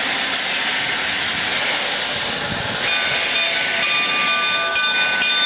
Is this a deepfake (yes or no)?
no